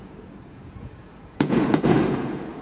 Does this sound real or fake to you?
fake